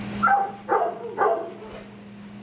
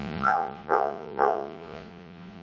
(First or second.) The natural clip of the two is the first